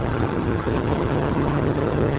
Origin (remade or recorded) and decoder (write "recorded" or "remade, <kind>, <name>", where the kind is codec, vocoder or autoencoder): remade, vocoder, HiFi-GAN